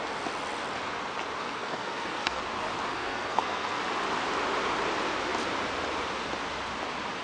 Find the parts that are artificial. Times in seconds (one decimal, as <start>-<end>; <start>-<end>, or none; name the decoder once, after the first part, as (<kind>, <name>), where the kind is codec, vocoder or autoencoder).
1.4-2.4 (codec, SNAC); 2.9-3.8